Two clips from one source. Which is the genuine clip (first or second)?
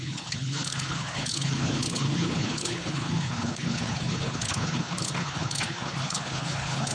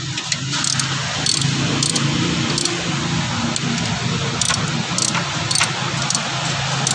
second